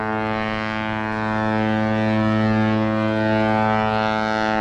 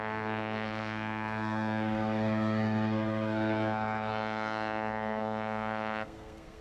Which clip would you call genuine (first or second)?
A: first